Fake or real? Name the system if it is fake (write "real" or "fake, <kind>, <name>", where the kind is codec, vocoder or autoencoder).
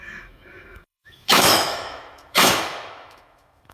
fake, autoencoder, DAC-VAE